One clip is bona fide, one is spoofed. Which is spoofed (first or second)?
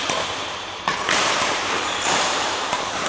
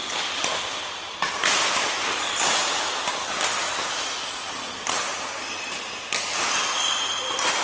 first